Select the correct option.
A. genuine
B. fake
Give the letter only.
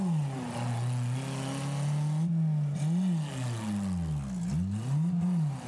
A